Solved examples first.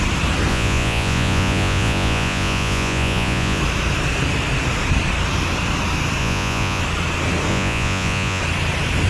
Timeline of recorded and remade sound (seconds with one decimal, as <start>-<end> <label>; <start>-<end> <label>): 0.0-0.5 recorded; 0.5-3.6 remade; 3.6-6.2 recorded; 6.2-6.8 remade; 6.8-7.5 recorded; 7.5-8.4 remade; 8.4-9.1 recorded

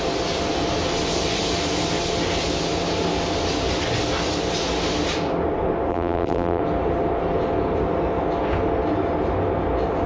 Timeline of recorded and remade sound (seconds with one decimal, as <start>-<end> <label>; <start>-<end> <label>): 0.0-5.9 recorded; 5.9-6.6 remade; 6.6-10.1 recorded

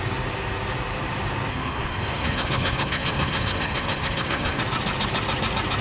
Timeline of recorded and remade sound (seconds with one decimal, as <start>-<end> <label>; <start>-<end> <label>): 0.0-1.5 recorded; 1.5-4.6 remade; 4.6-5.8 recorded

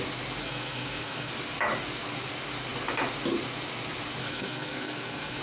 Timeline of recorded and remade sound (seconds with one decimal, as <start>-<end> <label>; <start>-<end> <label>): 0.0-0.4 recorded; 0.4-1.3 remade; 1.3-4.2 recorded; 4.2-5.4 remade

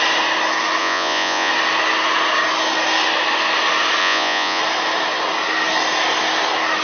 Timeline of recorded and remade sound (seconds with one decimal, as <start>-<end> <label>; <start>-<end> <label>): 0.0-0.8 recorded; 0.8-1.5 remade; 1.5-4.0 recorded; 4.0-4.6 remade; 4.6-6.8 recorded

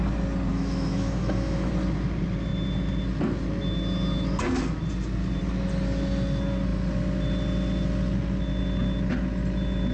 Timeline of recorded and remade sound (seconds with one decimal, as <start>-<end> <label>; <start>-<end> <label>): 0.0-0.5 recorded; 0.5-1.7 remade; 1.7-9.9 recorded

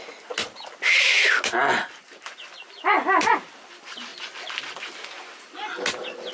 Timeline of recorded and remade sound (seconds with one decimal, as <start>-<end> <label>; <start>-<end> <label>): 0.0-6.3 recorded

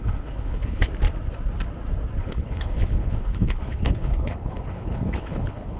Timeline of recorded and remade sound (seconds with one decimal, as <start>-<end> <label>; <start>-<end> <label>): 0.0-0.9 remade; 0.9-2.2 recorded; 2.2-5.8 remade